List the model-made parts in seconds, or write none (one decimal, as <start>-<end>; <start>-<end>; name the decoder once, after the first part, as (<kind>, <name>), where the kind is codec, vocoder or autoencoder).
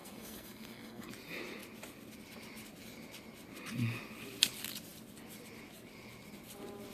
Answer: 0.0-1.1 (codec, SNAC)